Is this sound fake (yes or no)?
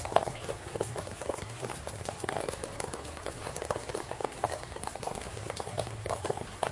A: yes